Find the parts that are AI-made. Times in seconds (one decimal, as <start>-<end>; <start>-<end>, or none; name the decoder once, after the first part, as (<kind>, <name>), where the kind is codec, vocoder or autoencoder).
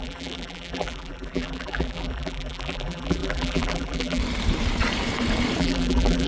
0.0-4.2 (vocoder, BigVGAN v2); 5.6-6.3